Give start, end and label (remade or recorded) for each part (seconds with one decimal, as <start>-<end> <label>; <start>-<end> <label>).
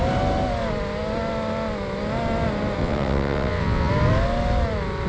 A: 0.0-2.8 recorded; 2.8-3.9 remade; 3.9-5.1 recorded